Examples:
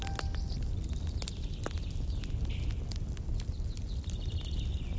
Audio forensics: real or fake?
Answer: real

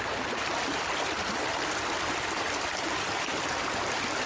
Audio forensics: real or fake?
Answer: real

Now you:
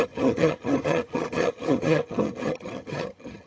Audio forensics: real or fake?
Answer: fake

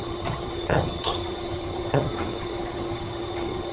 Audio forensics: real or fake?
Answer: fake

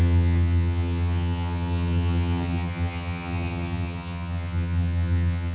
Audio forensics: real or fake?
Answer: fake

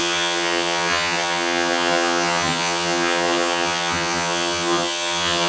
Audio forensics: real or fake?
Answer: fake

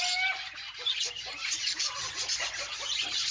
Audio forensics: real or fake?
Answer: real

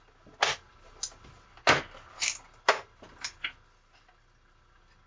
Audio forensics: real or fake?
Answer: real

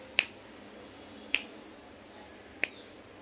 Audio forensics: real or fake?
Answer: real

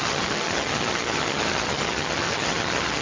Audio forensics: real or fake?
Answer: fake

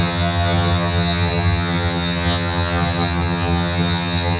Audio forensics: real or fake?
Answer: fake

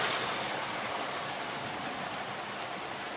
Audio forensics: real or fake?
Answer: real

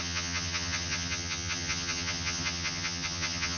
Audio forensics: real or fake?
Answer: fake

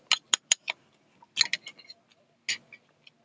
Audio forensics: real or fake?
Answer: real